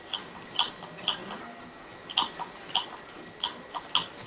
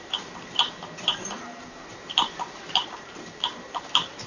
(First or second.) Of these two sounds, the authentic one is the first